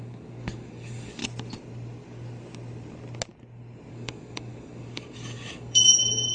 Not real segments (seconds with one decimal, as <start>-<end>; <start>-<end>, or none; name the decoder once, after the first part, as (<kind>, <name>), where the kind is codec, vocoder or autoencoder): 0.0-1.2 (codec, DAC); 3.9-6.3

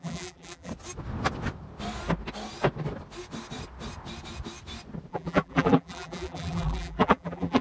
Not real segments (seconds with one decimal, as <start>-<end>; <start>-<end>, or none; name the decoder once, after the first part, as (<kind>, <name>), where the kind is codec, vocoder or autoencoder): 0.0-0.7 (vocoder, BigVGAN v2); 5.1-7.6

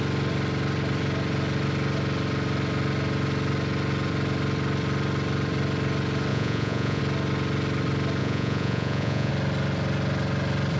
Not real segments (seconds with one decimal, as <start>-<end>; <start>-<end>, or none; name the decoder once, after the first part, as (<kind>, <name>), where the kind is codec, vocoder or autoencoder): 6.3-7.0 (vocoder, Vocos); 8.2-9.3

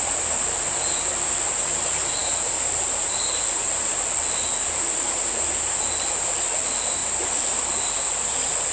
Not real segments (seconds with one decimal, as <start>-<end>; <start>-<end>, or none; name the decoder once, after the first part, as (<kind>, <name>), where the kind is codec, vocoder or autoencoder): none

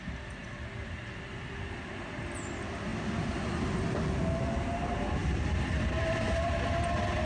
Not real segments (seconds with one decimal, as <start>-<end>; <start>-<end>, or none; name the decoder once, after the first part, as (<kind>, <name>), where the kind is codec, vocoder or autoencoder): 0.4-1.7 (vocoder, BigVGAN v2); 5.2-6.5

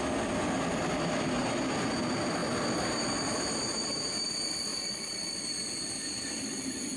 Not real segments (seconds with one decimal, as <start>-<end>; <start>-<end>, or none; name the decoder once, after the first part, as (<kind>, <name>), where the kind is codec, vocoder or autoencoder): 4.7-5.4 (vocoder, BigVGAN v2)

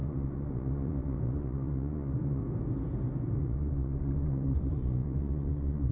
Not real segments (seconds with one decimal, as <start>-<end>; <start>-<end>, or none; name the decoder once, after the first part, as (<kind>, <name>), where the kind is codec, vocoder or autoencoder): 0.0-2.4 (vocoder, Vocos); 3.4-5.9

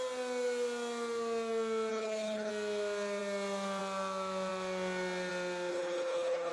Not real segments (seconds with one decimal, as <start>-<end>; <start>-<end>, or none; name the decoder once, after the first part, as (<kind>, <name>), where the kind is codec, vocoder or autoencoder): 1.9-2.5 (codec, HILCodec); 5.7-6.5